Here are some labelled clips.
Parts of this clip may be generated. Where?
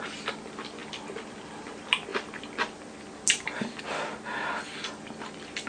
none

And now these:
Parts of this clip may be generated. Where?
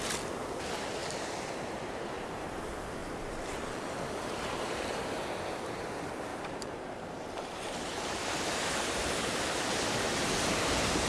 1.0-2.6 (vocoder, BigVGAN v2); 3.0-5.2; 6.3-9.4